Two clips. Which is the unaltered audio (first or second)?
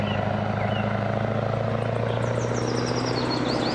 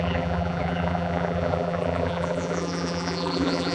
first